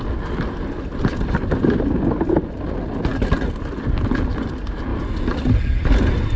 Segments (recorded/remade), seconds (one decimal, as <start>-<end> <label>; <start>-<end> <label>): 0.0-6.4 recorded